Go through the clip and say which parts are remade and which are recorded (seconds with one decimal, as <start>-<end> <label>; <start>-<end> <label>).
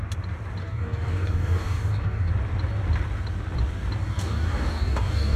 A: 0.0-0.6 recorded; 0.6-2.3 remade; 2.3-4.0 recorded; 4.0-5.4 remade